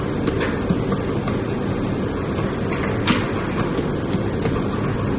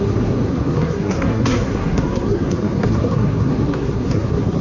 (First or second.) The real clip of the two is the first